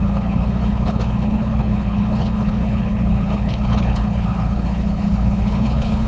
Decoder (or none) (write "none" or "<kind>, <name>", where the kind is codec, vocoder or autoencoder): codec, HILCodec